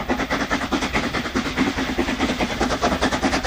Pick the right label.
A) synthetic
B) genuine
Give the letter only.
B